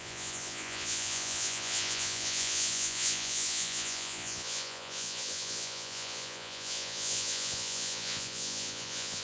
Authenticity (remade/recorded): remade